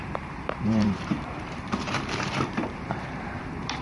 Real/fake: fake